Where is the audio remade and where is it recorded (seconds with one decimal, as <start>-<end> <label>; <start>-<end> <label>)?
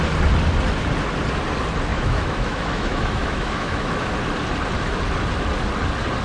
0.0-1.9 recorded; 1.9-4.1 remade; 4.1-6.2 recorded